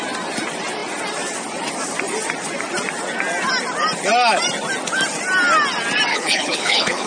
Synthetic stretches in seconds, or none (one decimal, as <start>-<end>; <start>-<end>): 6.1-7.1